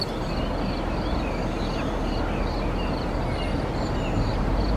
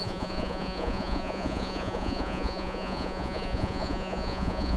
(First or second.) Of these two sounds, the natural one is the first